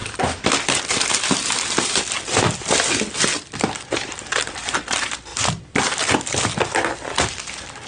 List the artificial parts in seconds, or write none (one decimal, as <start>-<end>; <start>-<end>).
0.0-5.3; 5.8-7.9